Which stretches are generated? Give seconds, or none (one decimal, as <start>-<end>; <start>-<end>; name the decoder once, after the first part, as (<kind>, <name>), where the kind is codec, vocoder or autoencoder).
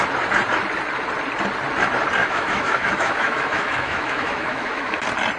2.2-5.0 (autoencoder, DAC-VAE)